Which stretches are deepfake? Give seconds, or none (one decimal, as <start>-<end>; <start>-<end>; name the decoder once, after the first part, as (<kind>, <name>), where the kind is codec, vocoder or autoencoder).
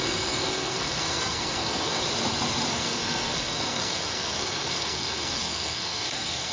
0.0-2.0 (codec, SNAC); 2.7-6.5